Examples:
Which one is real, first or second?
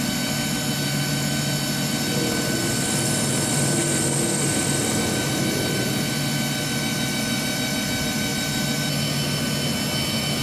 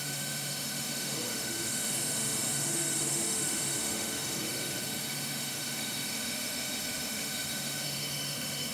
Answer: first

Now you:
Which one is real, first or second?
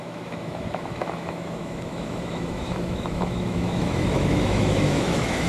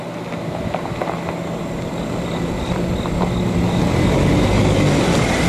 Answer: second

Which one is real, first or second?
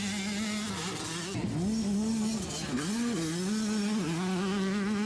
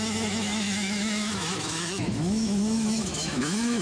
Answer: first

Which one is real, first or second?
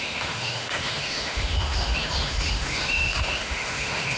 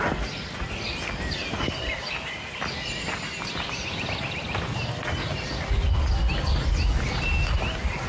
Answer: second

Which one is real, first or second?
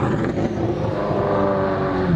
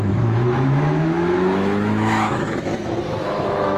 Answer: first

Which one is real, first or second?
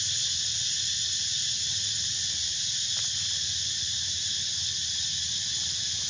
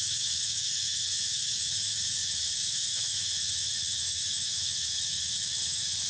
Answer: first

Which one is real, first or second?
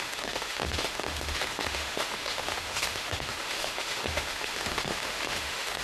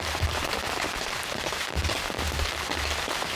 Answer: second